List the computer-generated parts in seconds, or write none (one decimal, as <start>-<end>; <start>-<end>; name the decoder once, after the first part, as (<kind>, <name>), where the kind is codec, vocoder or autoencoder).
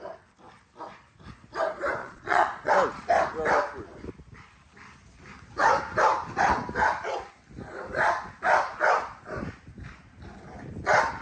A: 2.0-2.7 (vocoder, Vocos)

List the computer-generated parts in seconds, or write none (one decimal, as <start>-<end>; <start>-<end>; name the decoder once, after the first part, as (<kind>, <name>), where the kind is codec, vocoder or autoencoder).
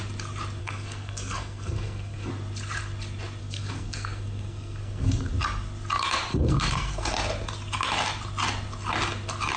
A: 0.6-2.3 (codec, SNAC); 3.4-5.3; 6.3-7.1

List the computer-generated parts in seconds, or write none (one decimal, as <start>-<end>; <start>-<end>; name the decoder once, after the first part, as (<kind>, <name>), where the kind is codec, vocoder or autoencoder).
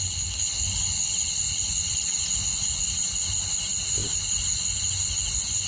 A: none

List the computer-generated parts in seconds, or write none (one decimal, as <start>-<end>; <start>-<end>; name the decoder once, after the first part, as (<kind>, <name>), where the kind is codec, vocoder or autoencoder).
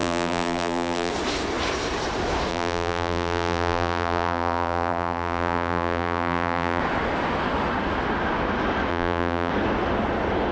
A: 0.0-1.1 (vocoder, BigVGAN v2); 2.5-6.8; 8.9-9.5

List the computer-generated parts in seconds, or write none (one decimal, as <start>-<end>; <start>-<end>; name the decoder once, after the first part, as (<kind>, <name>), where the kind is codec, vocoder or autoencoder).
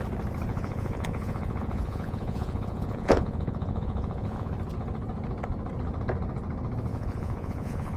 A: 0.5-4.5 (vocoder, Vocos); 6.9-8.0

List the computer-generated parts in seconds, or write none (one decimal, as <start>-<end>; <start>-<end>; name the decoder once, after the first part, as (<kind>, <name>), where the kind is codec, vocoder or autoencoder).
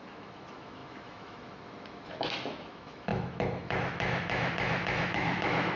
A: 0.0-5.8 (autoencoder, DAC-VAE)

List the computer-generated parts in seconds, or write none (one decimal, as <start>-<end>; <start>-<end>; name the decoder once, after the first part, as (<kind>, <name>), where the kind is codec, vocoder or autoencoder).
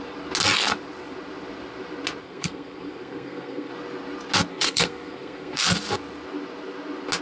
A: 2.2-3.7 (codec, SNAC); 4.5-5.6